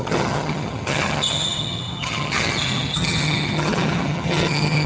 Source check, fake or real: fake